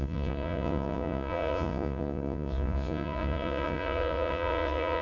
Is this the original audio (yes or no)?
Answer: no